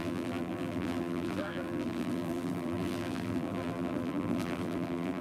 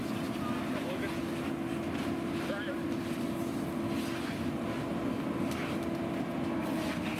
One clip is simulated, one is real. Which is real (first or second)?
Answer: second